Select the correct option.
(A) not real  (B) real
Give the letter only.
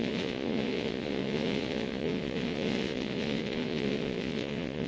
A